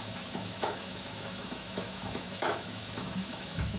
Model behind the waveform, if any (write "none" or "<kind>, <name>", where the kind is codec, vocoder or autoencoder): autoencoder, DAC-VAE